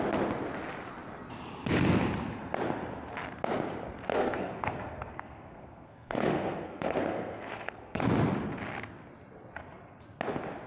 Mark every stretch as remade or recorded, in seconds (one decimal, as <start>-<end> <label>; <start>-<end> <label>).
0.0-4.1 recorded; 4.1-8.0 remade; 8.0-10.7 recorded

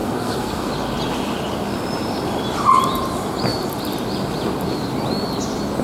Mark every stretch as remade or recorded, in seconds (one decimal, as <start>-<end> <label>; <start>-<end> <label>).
0.0-0.7 remade; 0.7-5.8 recorded

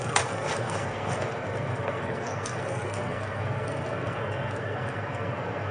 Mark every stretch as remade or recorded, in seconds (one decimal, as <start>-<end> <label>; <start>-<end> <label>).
0.0-5.7 remade

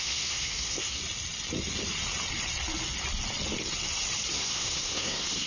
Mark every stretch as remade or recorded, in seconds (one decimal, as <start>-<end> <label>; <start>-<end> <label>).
0.0-1.0 remade; 1.0-4.3 recorded; 4.3-5.5 remade

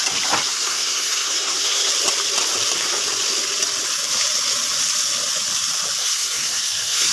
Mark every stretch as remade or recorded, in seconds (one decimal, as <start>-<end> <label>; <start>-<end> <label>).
0.0-0.5 recorded; 0.5-1.9 remade; 1.9-6.0 recorded; 6.0-7.1 remade

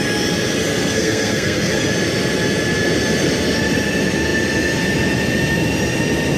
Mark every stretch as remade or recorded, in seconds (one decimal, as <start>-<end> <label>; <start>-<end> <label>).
0.0-0.7 recorded; 0.7-1.9 remade; 1.9-6.4 recorded

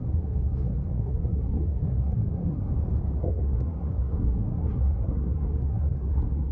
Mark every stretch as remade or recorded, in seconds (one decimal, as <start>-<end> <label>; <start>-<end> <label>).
0.0-2.7 remade; 2.7-3.2 recorded; 3.2-6.5 remade